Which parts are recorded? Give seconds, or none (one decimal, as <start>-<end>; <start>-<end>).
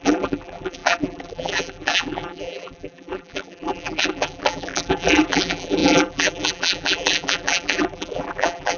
none